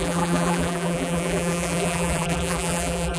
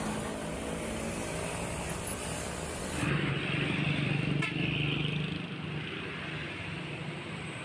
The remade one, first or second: first